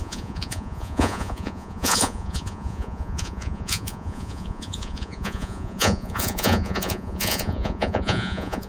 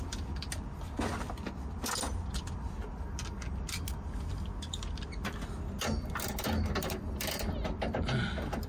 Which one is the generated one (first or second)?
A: first